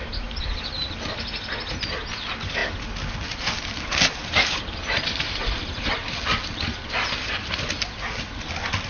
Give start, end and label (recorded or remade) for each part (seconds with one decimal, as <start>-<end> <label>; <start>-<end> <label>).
0.0-8.9 recorded